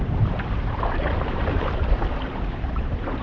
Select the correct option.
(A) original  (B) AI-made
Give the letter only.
B